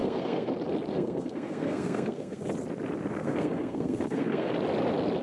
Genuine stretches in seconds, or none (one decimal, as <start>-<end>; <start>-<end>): 0.5-0.9; 2.4-3.2; 4.5-5.2

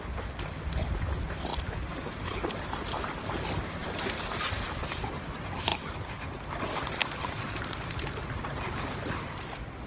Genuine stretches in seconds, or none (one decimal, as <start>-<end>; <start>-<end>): 0.0-3.8; 5.1-7.0; 8.1-9.9